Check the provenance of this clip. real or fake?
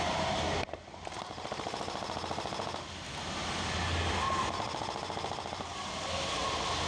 real